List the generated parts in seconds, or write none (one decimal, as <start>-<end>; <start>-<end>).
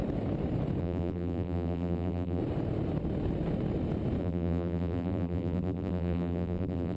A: 0.8-2.4; 4.2-7.0